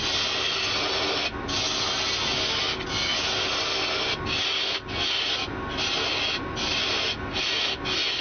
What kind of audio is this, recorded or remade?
recorded